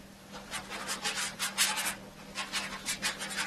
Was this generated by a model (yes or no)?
no